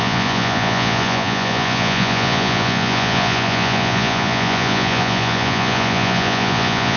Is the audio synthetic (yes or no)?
yes